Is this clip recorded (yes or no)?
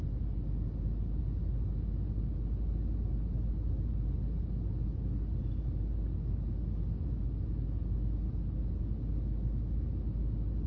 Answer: yes